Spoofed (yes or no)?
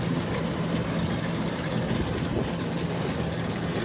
no